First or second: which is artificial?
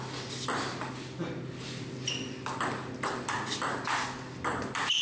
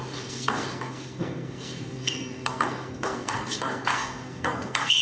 second